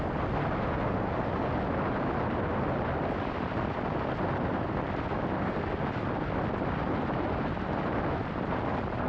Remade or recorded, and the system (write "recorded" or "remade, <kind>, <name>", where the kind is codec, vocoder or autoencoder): recorded